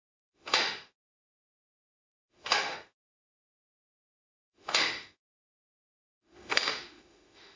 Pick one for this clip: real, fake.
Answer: fake